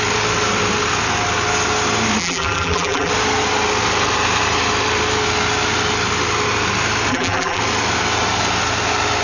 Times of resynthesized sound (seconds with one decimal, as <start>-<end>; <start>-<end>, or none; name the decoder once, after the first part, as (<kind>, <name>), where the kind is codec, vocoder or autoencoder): 2.2-3.1 (vocoder, BigVGAN v2); 7.1-7.6